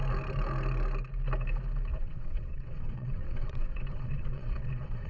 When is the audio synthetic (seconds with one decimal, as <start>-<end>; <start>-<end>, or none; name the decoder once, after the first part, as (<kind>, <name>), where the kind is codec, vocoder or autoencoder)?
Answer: 1.9-5.1 (vocoder, WaveNeXt)